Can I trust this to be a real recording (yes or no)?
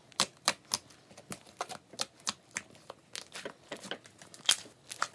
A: yes